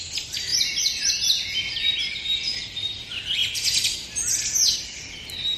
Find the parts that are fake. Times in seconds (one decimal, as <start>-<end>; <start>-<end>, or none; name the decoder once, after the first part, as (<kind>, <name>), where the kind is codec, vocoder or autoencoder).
none